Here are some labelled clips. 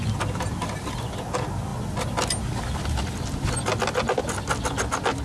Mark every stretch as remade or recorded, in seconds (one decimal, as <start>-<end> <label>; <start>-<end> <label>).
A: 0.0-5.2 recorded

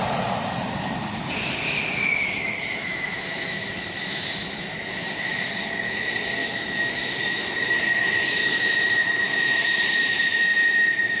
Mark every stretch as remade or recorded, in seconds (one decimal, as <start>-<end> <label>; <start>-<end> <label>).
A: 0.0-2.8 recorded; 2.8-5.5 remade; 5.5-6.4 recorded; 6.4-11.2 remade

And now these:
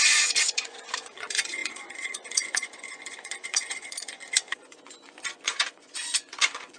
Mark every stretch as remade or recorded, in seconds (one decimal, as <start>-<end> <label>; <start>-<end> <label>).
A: 0.0-6.8 remade

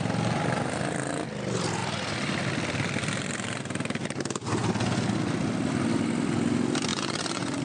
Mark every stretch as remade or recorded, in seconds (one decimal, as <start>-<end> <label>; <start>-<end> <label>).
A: 0.0-6.9 recorded; 6.9-7.6 remade